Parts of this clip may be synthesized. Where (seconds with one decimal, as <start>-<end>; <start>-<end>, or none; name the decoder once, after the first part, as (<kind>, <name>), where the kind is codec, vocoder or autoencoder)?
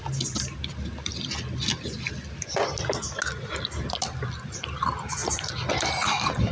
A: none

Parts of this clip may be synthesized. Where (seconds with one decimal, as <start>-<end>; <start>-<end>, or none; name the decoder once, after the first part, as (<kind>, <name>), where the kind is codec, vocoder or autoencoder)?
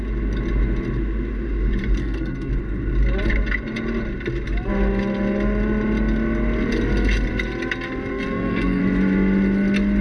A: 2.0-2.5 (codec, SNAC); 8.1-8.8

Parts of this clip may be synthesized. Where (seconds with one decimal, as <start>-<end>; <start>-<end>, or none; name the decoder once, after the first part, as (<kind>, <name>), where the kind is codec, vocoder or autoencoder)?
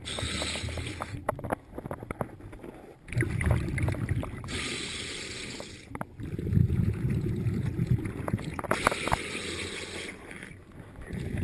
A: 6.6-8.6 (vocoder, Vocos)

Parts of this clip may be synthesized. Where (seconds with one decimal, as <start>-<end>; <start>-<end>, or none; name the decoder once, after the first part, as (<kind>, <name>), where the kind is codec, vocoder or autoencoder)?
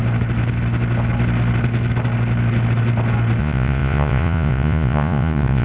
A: 3.4-5.6 (vocoder, Vocos)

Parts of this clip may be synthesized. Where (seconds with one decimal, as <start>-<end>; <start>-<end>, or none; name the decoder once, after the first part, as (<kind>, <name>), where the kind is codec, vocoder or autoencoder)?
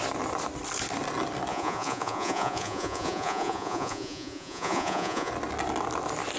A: 1.5-5.3 (vocoder, Vocos)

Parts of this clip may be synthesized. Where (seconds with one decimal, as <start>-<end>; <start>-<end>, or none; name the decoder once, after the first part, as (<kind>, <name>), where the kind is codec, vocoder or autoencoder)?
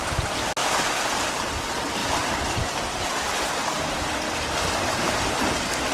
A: none